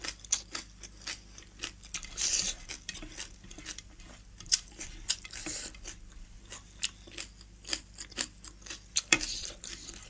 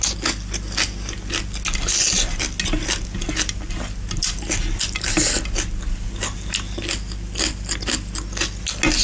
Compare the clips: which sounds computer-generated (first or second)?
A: first